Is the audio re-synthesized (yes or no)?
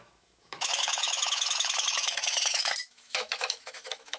yes